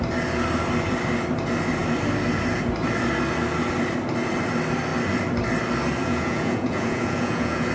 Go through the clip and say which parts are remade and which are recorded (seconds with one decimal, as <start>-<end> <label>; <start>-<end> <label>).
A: 0.0-6.0 recorded; 6.0-7.7 remade